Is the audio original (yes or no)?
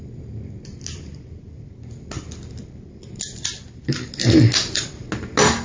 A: yes